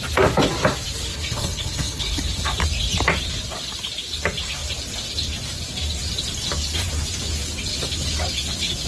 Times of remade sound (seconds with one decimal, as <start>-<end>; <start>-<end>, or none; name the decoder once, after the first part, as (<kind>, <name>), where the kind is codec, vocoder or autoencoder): 1.1-2.2 (codec, HILCodec)